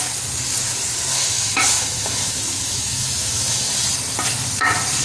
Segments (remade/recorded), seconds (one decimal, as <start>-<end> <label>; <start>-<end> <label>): 0.0-1.1 recorded; 1.1-3.7 remade; 3.7-5.0 recorded